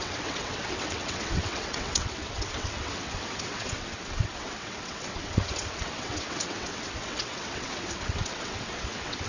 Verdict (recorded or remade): remade